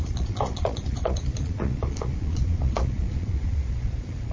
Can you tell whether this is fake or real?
fake